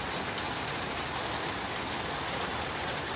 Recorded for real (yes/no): yes